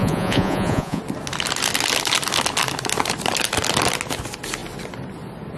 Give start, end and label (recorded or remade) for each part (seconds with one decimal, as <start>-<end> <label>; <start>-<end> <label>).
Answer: 0.0-1.0 remade; 1.0-5.6 recorded